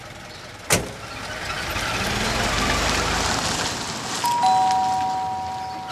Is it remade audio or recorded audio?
recorded